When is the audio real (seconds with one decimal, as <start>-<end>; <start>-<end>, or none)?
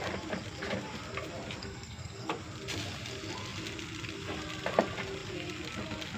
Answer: 0.0-1.6; 2.3-6.2